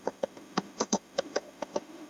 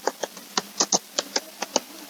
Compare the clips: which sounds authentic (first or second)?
second